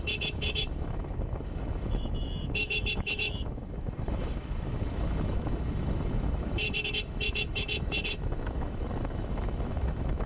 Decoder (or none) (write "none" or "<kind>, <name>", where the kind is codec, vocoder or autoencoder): autoencoder, DAC-VAE